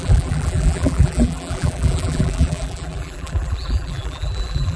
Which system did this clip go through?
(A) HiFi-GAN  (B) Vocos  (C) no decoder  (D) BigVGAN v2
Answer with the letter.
D